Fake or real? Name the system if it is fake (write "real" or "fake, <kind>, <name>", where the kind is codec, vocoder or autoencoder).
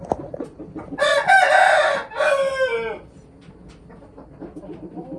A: real